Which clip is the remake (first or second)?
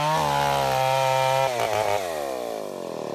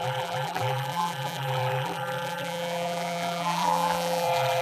second